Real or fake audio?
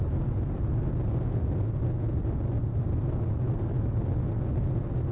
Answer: real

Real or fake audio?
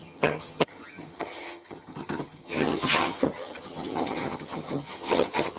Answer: fake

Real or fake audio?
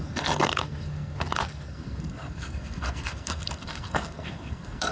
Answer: fake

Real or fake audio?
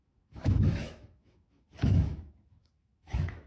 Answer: fake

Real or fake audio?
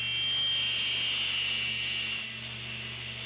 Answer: real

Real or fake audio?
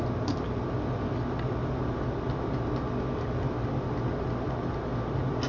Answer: real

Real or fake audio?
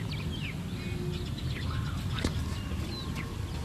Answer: real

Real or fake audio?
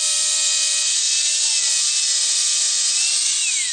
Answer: real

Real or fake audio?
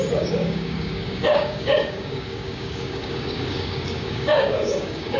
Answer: fake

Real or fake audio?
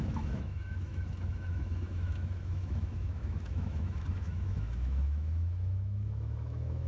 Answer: fake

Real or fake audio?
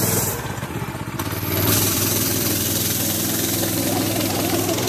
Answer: fake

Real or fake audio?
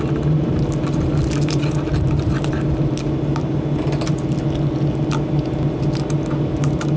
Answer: real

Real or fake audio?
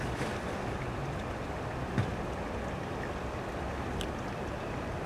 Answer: real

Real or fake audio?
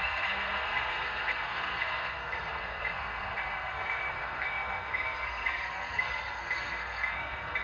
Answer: fake